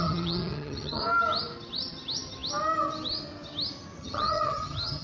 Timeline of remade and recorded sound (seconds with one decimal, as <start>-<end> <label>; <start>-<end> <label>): 0.0-1.0 remade; 1.0-4.0 recorded; 4.0-5.0 remade